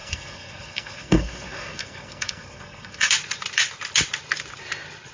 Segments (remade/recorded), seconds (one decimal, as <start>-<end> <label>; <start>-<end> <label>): 0.0-3.1 remade; 3.1-5.1 recorded